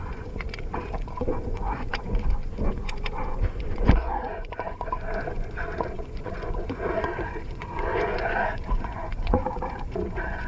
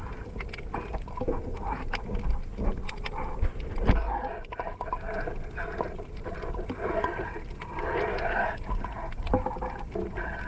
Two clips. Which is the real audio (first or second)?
second